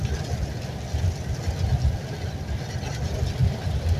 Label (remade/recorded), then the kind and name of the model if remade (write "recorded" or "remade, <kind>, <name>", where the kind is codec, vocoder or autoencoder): recorded